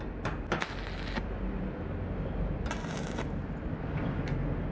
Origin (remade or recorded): recorded